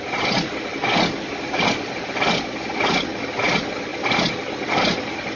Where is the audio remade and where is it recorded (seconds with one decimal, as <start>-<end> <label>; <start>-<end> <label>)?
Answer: 0.0-5.3 recorded